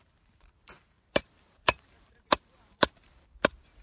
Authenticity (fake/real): fake